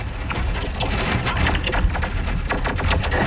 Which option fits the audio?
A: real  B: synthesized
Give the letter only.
B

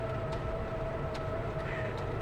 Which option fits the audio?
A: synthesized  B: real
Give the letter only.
A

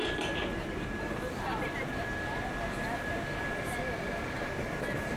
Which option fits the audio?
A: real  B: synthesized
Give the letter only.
A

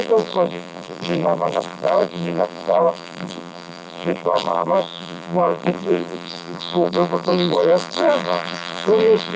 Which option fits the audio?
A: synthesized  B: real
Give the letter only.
A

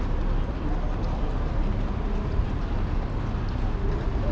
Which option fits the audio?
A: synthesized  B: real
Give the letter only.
B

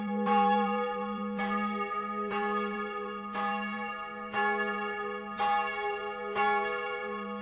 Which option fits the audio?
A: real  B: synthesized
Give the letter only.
B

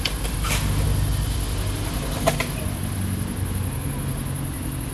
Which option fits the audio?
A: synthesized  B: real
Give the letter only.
B